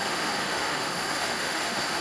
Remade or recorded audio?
remade